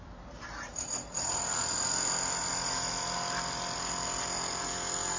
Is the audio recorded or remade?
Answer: recorded